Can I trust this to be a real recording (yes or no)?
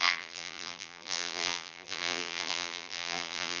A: no